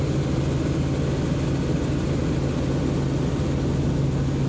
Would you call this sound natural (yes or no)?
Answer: yes